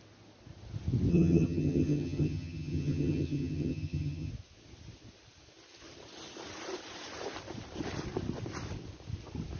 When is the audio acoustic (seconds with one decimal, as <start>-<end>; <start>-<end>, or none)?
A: 0.0-1.1; 4.3-9.6